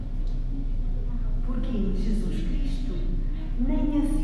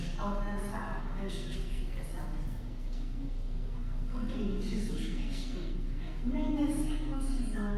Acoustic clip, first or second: first